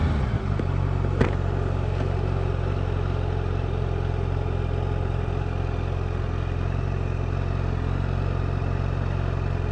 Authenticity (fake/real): real